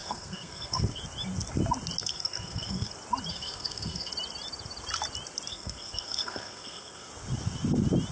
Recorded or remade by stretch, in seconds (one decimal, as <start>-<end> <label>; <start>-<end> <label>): 0.0-1.0 remade; 1.0-2.0 recorded; 2.0-2.9 remade; 2.9-3.3 recorded; 3.3-4.1 remade; 4.1-5.5 recorded; 5.5-7.1 remade; 7.1-8.1 recorded